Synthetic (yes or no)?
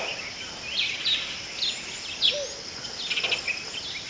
no